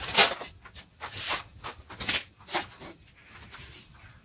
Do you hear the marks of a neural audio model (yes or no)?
no